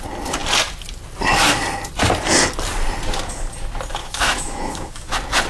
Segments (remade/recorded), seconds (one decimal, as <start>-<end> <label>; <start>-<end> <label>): 0.0-4.0 recorded; 4.0-5.1 remade; 5.1-5.5 recorded